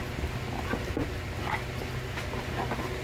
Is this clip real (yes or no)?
yes